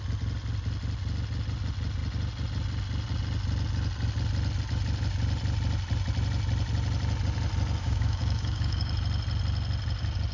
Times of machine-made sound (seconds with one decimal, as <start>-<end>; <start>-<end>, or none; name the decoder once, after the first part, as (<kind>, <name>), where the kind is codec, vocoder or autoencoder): 7.8-8.9 (codec, DAC)